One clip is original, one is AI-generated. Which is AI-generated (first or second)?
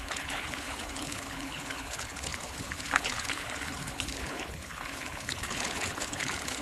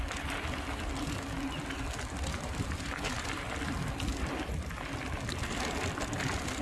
first